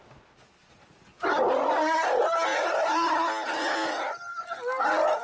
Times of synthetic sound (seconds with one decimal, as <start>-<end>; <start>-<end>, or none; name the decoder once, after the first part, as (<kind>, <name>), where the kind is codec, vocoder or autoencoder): 2.5-4.0 (vocoder, BigVGAN v2)